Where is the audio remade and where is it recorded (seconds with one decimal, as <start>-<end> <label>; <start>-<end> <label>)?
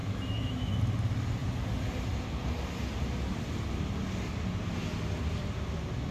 0.0-0.8 remade; 0.8-6.1 recorded